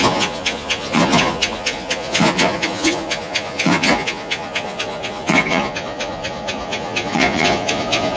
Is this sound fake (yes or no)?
yes